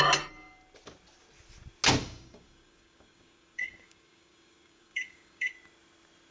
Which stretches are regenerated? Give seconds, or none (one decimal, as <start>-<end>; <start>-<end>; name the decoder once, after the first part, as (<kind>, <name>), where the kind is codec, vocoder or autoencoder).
2.0-5.5 (codec, DAC)